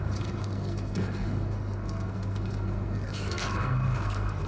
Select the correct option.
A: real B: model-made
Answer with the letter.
B